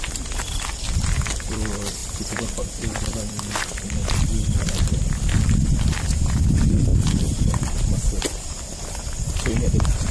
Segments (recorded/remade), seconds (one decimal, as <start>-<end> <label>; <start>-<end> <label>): 0.0-10.1 remade

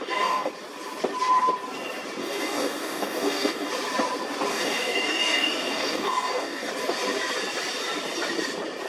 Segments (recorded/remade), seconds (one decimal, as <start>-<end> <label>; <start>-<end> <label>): 0.0-0.5 remade; 0.5-2.2 recorded; 2.2-3.7 remade; 3.7-4.5 recorded; 4.5-6.7 remade; 6.7-8.9 recorded